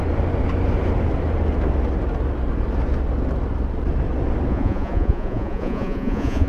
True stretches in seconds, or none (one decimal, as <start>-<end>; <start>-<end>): 0.0-4.5